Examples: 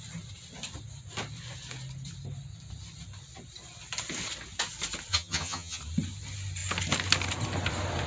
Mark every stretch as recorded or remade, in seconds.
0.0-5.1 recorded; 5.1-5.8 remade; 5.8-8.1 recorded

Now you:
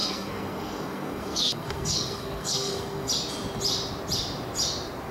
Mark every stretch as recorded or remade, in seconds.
0.0-3.1 remade; 3.1-5.1 recorded

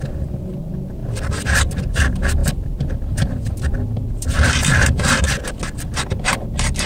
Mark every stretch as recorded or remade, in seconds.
0.0-1.0 recorded; 1.0-1.8 remade; 1.8-2.4 recorded; 2.4-5.2 remade; 5.2-6.9 recorded